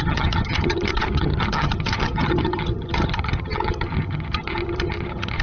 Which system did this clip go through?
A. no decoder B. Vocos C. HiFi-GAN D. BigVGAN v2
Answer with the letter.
C